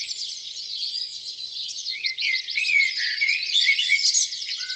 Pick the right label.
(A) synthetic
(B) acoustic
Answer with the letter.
A